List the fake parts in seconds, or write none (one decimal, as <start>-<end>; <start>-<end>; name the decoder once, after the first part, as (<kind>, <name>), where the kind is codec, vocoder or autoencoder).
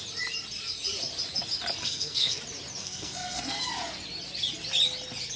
1.8-2.4 (codec, SNAC); 2.8-3.6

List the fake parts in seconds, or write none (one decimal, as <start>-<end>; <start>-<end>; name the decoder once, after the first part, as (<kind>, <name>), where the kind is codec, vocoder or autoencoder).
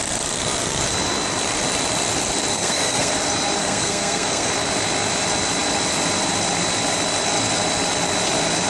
2.5-3.1 (codec, SNAC); 3.6-4.5